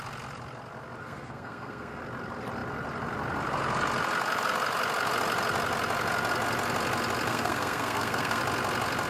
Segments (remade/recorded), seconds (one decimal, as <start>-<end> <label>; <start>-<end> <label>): 0.0-1.0 recorded; 1.0-2.0 remade; 2.0-7.3 recorded; 7.3-8.4 remade; 8.4-9.1 recorded